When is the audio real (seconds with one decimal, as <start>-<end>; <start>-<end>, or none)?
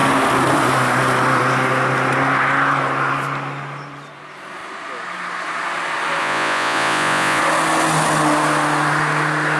0.0-6.2; 7.4-9.6